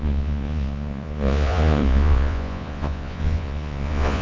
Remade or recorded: remade